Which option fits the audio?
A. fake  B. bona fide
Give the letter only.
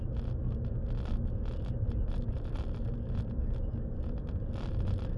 B